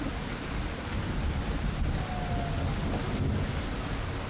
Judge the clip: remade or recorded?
recorded